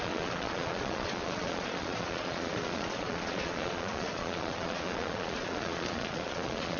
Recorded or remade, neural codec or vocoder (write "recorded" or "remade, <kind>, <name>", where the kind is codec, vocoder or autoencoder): remade, vocoder, Vocos